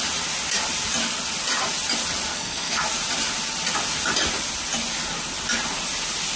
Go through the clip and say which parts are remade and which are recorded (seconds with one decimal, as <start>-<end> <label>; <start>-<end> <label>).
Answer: 0.0-2.3 recorded; 2.3-2.8 remade; 2.8-6.4 recorded